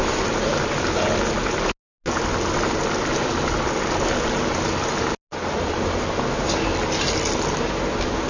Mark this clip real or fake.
real